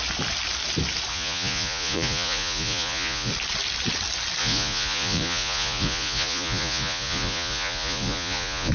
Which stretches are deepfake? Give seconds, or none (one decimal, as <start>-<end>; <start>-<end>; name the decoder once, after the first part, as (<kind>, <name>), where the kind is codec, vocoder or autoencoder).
1.1-3.3 (vocoder, Vocos); 4.4-8.7